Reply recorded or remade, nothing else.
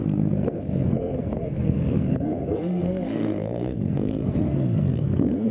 remade